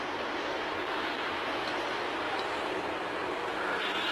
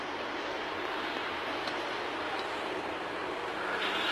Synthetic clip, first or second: second